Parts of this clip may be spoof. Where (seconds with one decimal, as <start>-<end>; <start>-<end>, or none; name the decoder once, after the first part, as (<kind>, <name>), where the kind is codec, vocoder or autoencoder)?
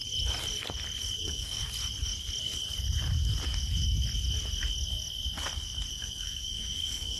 1.2-1.6 (codec, SNAC); 5.9-7.2